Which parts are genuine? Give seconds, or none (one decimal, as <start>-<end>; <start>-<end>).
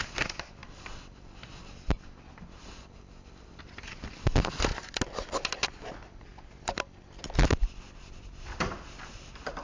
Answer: 0.0-9.6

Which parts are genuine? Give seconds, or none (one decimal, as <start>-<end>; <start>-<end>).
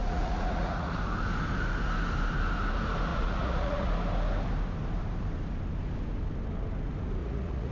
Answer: 1.0-3.1; 3.9-7.2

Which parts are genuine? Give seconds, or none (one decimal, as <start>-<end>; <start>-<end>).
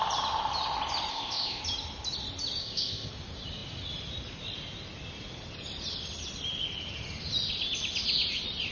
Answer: 0.0-1.1; 1.6-2.6; 3.1-8.7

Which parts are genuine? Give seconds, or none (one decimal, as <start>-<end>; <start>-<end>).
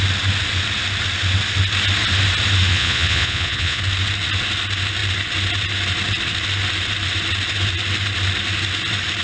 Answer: 0.0-2.7; 3.8-9.2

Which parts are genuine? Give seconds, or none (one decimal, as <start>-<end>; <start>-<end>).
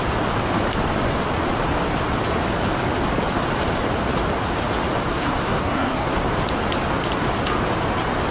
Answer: 0.0-5.1; 6.1-8.3